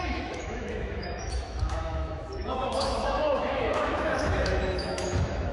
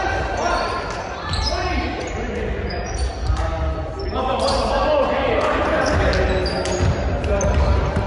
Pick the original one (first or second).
second